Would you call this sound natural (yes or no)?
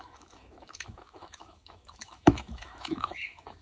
no